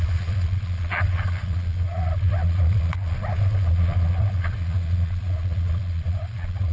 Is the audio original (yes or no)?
no